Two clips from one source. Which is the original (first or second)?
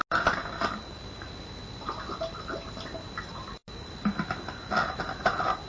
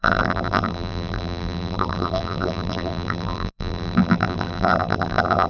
first